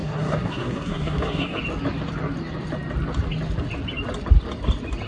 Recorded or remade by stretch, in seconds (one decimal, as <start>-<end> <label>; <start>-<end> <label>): 0.0-1.6 remade; 1.6-5.1 recorded